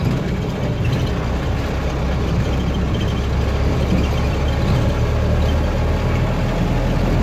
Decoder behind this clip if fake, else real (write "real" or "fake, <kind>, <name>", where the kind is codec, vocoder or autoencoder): real